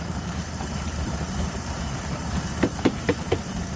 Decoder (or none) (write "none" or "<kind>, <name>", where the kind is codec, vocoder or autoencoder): vocoder, BigVGAN v2